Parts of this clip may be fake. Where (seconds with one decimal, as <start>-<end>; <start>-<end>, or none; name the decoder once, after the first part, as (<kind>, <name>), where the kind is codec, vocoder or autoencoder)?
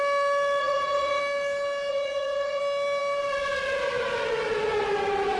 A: 0.6-1.2 (vocoder, Vocos); 1.9-2.6